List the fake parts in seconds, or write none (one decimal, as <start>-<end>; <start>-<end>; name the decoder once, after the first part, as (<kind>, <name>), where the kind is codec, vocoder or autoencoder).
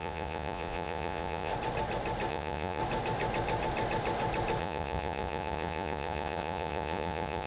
0.0-1.5 (vocoder, Vocos); 2.3-2.8; 4.6-7.5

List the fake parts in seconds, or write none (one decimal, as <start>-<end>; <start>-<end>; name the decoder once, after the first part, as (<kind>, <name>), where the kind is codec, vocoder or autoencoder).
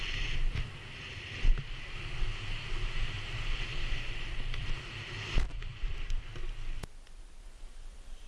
1.0-1.5 (vocoder, BigVGAN v2); 4.6-6.2; 7.4-8.3